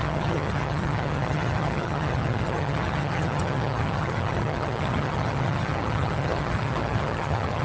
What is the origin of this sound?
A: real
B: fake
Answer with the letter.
B